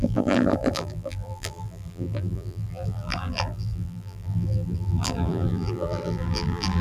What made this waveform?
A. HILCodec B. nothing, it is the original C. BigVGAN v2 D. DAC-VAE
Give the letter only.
C